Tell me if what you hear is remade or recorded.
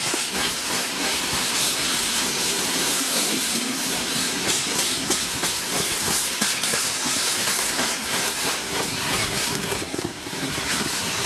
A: remade